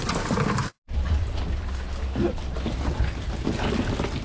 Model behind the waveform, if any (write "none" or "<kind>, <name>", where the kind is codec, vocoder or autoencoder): none